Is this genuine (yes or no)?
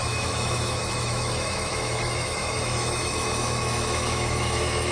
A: no